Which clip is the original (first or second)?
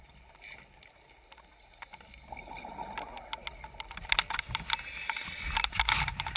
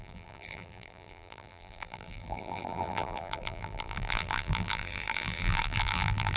first